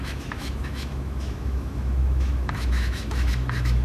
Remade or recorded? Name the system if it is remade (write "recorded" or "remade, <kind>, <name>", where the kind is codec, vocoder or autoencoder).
remade, autoencoder, DAC-VAE